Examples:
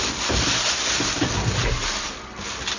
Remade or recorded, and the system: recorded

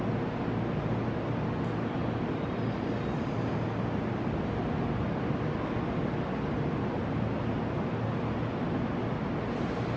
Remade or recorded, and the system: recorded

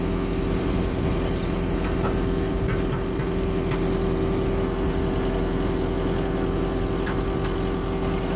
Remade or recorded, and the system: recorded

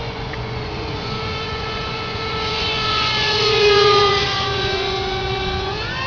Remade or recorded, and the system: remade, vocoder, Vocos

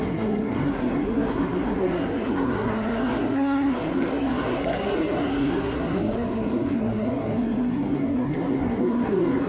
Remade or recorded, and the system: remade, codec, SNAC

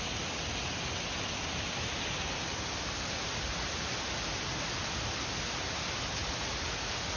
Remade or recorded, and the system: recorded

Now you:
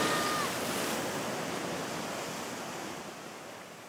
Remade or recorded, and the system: recorded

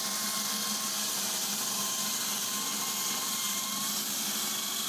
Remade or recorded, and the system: remade, vocoder, BigVGAN v2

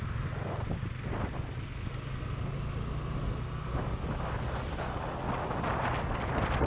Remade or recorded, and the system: recorded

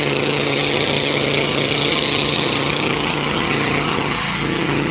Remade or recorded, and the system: remade, vocoder, HiFi-GAN